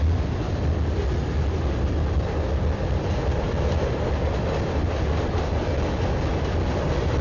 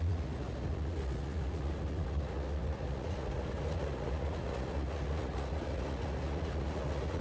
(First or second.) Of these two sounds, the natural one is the first